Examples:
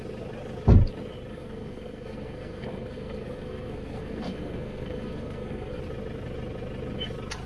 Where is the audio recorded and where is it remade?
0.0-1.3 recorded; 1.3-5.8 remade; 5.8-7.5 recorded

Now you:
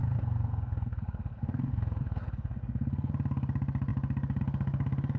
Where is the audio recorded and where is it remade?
0.0-3.1 remade; 3.1-5.2 recorded

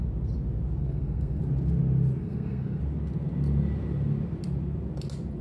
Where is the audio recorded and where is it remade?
0.0-0.8 recorded; 0.8-1.4 remade; 1.4-2.2 recorded; 2.2-2.8 remade; 2.8-5.4 recorded

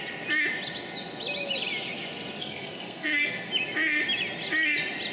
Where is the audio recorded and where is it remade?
0.0-2.4 recorded; 2.4-3.5 remade; 3.5-5.1 recorded